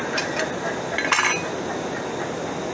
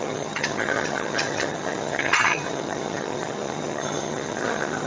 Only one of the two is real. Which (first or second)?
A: first